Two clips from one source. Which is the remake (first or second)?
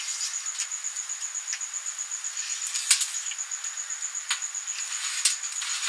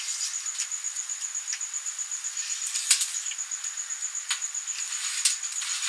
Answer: second